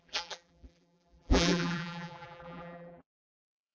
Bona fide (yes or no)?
no